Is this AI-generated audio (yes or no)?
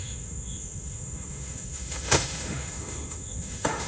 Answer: yes